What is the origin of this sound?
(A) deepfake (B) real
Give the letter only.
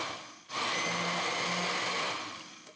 B